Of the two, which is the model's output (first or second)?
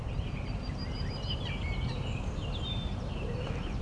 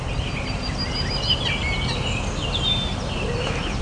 first